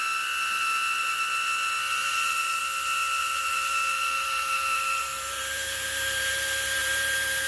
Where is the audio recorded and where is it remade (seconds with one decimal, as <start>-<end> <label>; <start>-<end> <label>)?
0.0-2.0 recorded; 2.0-2.6 remade; 2.6-3.2 recorded; 3.2-6.3 remade; 6.3-6.8 recorded; 6.8-7.5 remade